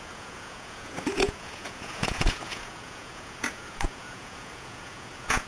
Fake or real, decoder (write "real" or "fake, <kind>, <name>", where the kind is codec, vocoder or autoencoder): fake, vocoder, Vocos